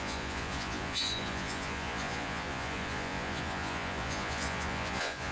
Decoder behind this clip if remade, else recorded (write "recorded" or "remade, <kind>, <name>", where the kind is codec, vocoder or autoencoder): remade, vocoder, Vocos